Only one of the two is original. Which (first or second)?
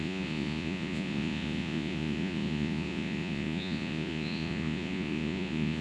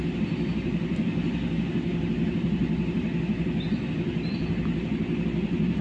second